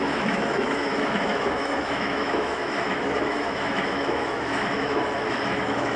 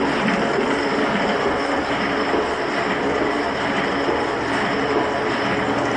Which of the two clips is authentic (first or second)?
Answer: second